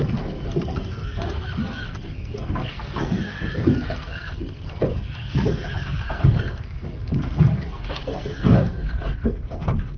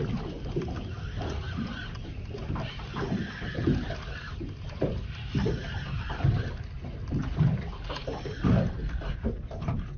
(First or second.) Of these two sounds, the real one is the second